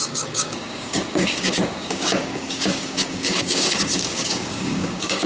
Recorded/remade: remade